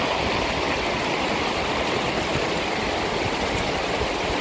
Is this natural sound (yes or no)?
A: yes